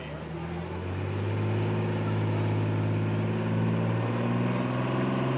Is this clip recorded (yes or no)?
yes